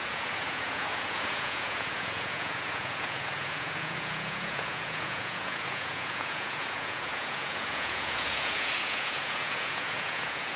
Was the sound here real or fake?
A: fake